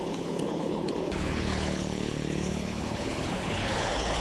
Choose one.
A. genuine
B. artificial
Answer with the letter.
B